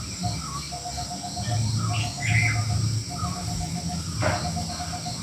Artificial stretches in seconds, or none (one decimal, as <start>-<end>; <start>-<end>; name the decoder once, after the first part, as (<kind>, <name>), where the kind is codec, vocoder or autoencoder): none